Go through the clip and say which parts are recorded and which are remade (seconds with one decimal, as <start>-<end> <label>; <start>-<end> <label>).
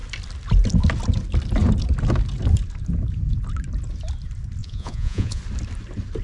0.0-4.6 recorded; 4.6-5.4 remade; 5.4-6.2 recorded